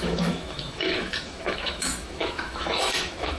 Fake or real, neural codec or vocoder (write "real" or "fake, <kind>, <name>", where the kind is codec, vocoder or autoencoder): fake, autoencoder, DAC-VAE